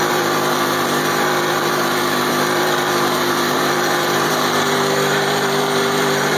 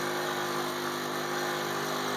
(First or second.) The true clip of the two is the second